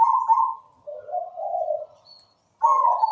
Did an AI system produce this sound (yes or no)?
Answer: no